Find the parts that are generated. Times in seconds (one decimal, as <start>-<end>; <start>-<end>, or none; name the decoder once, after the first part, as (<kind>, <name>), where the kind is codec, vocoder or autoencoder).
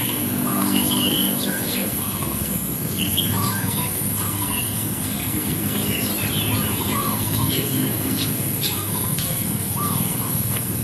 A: 0.0-6.1 (codec, SNAC); 6.7-10.8